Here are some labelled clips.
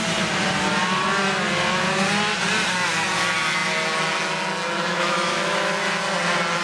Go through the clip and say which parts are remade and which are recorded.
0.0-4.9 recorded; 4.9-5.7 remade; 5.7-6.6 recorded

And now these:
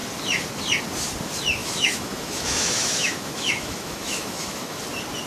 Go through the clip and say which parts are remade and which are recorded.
0.0-1.6 recorded; 1.6-4.8 remade; 4.8-5.3 recorded

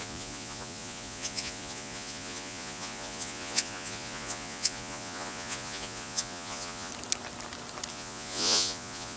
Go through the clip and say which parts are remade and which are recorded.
0.0-6.9 remade; 6.9-7.9 recorded; 7.9-9.2 remade

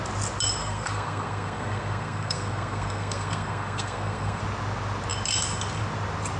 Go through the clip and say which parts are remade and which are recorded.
0.0-0.6 recorded; 0.6-4.4 remade; 4.4-6.4 recorded